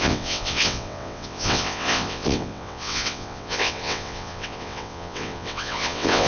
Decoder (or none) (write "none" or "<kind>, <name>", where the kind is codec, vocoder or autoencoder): vocoder, WaveNeXt